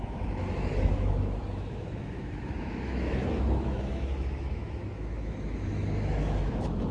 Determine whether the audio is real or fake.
fake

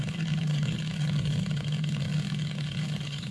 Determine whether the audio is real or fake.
fake